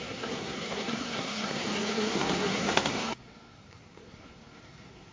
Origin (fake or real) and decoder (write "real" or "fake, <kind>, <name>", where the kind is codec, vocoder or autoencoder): fake, codec, SNAC